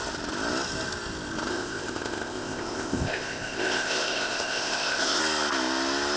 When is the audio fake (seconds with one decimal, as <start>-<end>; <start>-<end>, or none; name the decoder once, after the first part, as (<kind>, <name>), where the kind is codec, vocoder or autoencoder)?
1.5-5.2 (codec, ZipCodec)